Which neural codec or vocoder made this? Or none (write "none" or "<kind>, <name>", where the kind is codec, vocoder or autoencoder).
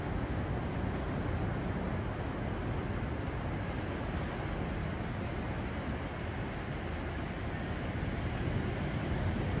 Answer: none